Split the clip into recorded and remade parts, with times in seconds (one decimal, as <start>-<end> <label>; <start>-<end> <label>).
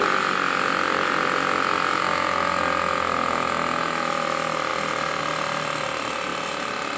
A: 0.0-7.0 recorded